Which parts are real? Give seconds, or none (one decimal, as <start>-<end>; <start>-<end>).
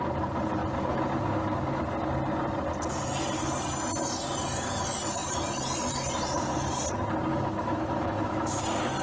0.0-7.3; 8.6-9.0